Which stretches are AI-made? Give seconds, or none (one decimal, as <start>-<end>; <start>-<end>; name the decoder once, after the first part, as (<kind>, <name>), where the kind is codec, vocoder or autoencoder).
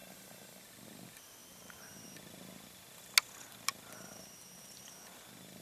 0.0-0.6 (vocoder, BigVGAN v2)